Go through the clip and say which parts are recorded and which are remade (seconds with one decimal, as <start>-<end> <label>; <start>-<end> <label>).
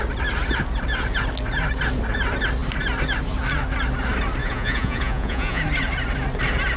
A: 0.0-4.4 recorded; 4.4-5.6 remade; 5.6-6.8 recorded